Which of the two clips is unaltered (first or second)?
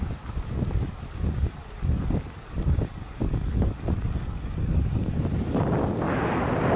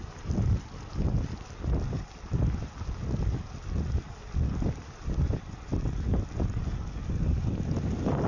second